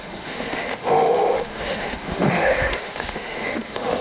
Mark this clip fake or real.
fake